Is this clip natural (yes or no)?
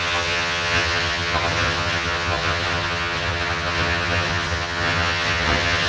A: no